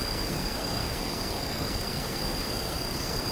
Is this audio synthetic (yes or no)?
yes